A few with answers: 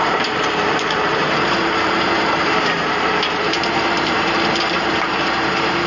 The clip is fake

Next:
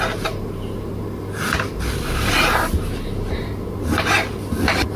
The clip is real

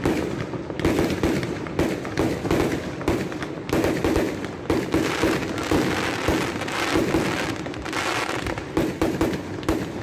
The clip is real